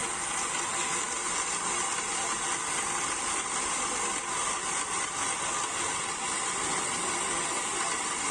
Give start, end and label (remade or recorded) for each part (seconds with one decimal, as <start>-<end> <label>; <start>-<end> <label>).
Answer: 0.0-8.3 recorded